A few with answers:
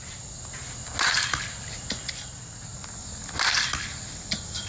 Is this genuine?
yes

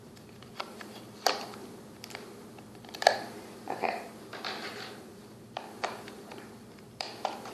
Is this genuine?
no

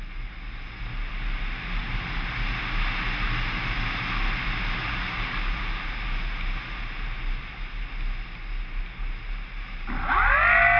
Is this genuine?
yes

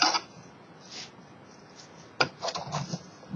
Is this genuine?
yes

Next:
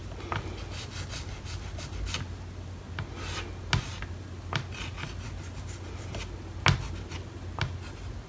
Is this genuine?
yes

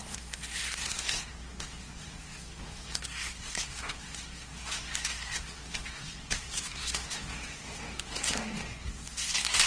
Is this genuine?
no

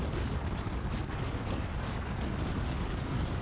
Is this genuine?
no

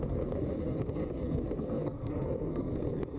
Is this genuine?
no